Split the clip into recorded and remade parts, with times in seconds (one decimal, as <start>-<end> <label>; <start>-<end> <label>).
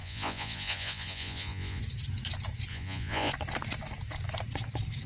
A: 0.0-1.8 remade; 1.8-2.7 recorded; 2.7-3.3 remade; 3.3-5.1 recorded